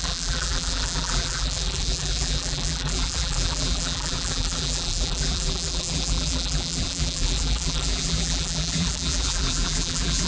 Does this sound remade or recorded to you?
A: remade